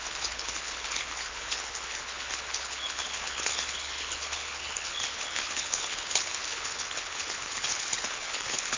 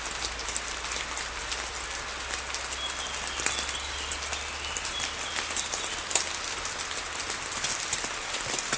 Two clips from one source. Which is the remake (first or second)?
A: first